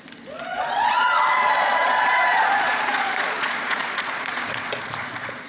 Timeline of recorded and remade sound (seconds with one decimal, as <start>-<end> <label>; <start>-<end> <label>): 0.0-5.5 remade